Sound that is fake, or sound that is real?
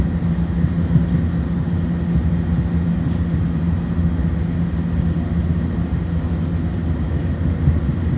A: real